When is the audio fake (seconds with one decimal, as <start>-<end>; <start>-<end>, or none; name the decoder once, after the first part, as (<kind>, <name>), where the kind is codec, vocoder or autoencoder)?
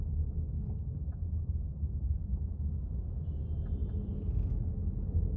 1.2-3.0 (vocoder, BigVGAN v2); 3.8-4.5